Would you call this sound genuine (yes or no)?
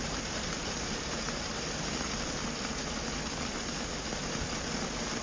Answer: yes